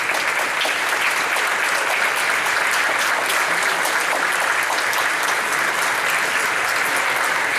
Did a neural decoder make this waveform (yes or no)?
no